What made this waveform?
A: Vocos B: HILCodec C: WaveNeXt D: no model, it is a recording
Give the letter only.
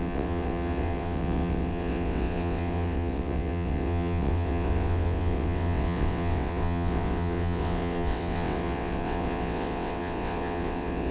C